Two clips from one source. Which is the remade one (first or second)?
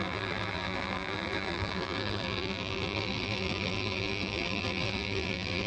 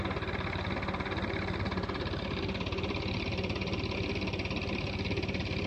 first